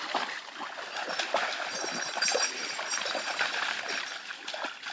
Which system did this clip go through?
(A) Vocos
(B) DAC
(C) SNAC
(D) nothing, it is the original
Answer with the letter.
D